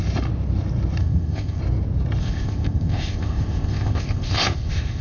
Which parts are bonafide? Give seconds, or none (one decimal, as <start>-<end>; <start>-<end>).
0.0-1.0; 1.6-2.2